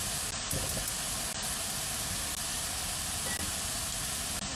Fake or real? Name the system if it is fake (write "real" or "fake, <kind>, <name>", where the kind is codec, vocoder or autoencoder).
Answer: real